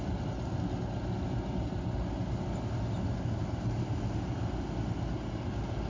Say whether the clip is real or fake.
real